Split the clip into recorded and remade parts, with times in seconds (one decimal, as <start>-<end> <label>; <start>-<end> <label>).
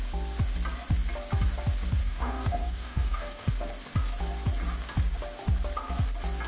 0.0-2.0 recorded; 2.0-3.5 remade; 3.5-6.5 recorded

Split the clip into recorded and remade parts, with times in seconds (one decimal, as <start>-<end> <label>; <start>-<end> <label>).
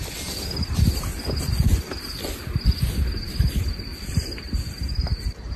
0.0-3.9 recorded; 3.9-4.4 remade; 4.4-5.6 recorded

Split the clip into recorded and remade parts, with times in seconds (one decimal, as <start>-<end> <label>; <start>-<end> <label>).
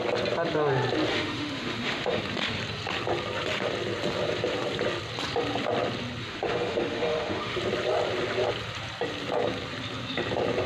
0.0-1.1 recorded; 1.1-2.2 remade; 2.2-6.2 recorded; 6.2-7.6 remade; 7.6-10.7 recorded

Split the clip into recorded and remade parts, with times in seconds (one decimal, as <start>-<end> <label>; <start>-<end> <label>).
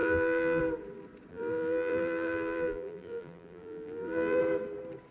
0.0-0.6 remade; 0.6-1.3 recorded; 1.3-4.4 remade; 4.4-5.1 recorded